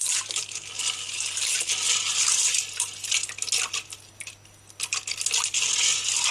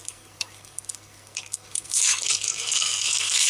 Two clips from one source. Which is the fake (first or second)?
second